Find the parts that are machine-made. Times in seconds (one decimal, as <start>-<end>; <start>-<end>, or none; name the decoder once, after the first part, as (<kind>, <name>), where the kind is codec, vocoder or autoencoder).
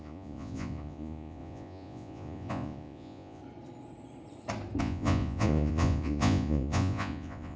0.0-3.4 (vocoder, Vocos); 4.8-7.6